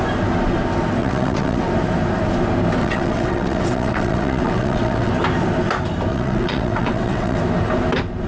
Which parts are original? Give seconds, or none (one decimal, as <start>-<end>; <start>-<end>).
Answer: 0.0-1.0; 1.7-2.8; 5.1-6.1; 7.4-8.3